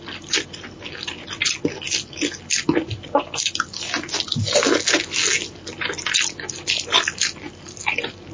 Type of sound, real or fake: real